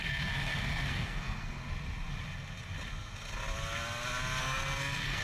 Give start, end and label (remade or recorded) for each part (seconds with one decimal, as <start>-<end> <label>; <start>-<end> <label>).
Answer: 0.0-1.6 remade; 1.6-4.4 recorded; 4.4-5.2 remade